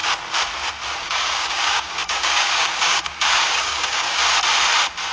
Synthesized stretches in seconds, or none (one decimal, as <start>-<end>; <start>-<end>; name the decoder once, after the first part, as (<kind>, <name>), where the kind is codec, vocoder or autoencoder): 1.0-4.2 (codec, DAC)